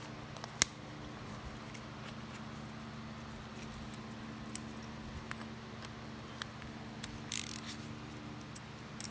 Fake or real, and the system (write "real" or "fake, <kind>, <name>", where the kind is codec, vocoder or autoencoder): real